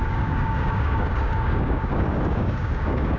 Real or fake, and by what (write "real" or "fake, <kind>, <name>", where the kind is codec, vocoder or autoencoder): fake, codec, DAC